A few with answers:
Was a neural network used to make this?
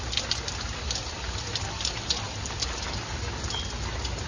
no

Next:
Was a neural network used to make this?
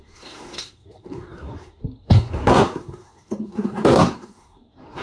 yes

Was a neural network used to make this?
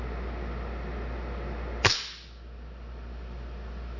no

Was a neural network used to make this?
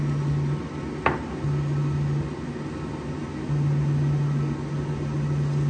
no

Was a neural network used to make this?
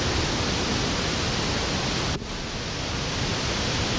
no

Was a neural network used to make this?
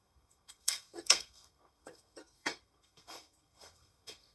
yes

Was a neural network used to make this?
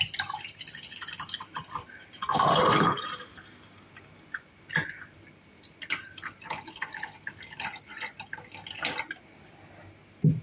no